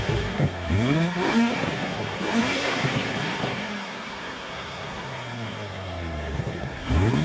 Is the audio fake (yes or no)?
yes